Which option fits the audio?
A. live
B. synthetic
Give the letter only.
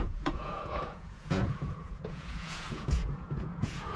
B